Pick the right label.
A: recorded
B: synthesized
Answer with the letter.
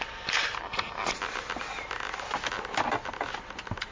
A